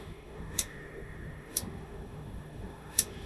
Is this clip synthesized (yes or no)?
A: yes